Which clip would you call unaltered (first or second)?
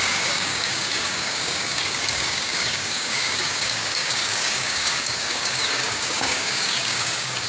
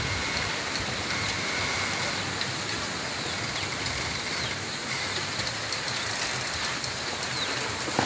second